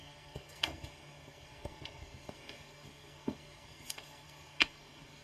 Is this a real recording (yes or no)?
no